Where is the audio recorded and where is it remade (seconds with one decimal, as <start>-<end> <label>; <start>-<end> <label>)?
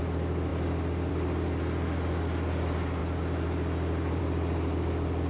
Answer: 0.0-5.3 recorded